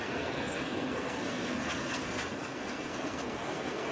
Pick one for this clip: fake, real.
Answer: fake